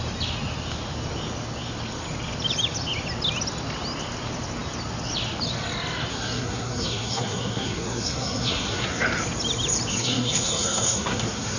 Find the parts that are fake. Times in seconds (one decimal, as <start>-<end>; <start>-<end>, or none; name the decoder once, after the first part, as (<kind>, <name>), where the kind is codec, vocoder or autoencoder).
6.1-9.0 (codec, SNAC); 9.9-11.6